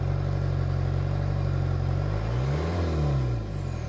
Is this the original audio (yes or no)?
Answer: yes